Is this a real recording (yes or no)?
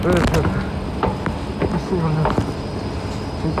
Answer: yes